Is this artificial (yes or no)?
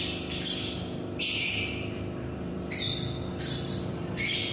yes